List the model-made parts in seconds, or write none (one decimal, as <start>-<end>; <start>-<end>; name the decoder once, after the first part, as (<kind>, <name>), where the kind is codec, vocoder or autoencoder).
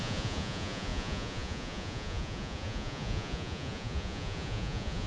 0.0-5.1 (vocoder, Vocos)